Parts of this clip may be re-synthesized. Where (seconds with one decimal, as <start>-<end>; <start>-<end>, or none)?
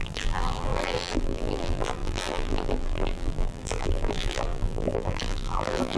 0.0-6.0